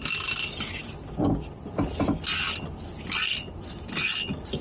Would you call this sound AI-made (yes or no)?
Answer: no